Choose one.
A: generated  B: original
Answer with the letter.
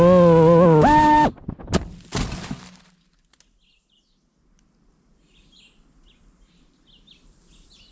B